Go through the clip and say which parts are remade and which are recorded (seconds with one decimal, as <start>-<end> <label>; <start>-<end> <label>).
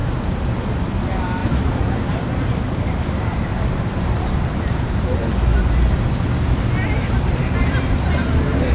0.0-0.5 remade; 0.5-1.4 recorded; 1.4-5.2 remade; 5.2-6.8 recorded; 6.8-8.7 remade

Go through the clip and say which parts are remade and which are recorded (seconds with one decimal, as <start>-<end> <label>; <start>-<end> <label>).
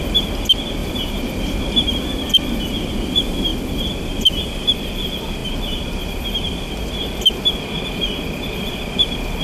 0.0-0.8 recorded; 0.8-1.6 remade; 1.6-5.4 recorded; 5.4-7.2 remade; 7.2-9.4 recorded